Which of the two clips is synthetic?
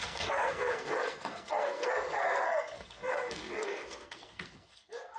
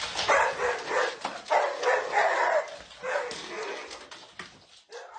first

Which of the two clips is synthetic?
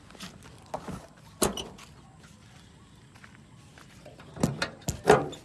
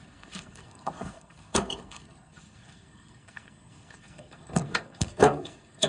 second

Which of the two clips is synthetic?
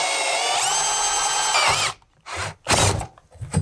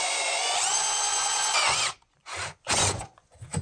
second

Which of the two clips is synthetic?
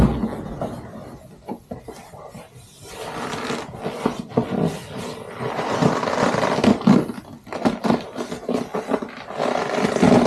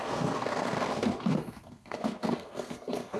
second